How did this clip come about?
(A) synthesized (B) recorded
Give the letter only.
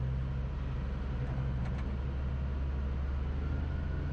B